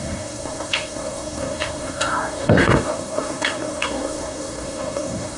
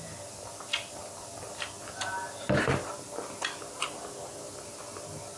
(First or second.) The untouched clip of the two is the second